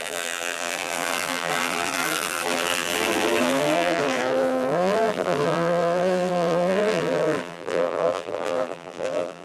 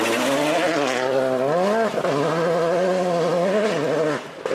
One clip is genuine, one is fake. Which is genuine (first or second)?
second